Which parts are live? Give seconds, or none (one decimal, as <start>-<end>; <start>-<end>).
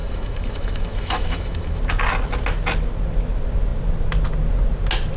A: 1.8-5.2